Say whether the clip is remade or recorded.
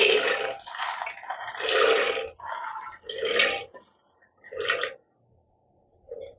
recorded